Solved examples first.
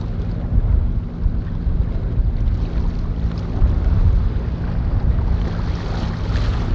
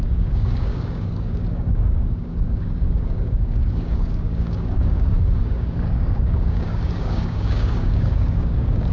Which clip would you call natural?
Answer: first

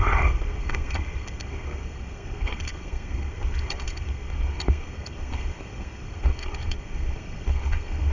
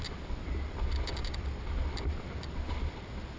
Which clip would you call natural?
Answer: second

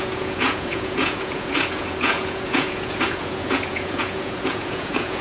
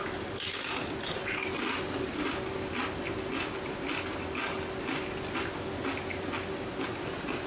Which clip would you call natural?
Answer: second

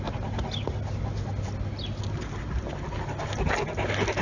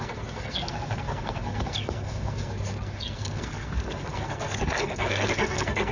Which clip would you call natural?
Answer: first